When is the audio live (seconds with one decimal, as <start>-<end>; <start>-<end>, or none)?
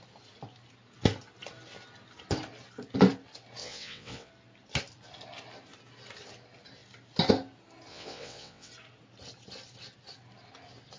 0.0-3.6; 4.3-7.9; 8.7-11.0